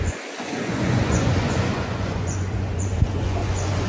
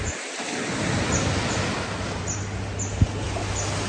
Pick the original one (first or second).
second